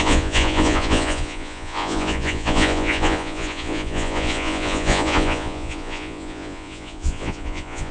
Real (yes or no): no